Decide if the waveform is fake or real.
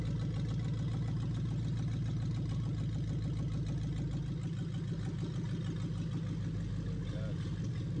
real